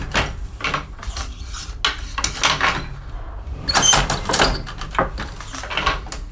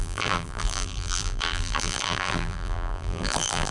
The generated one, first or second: second